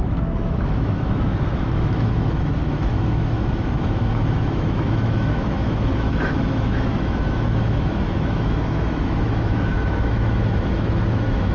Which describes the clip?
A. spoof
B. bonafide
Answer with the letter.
A